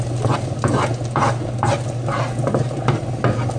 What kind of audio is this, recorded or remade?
recorded